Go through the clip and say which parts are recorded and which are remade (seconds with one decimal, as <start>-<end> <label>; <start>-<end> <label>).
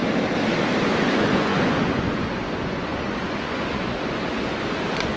0.0-1.0 recorded; 1.0-5.2 remade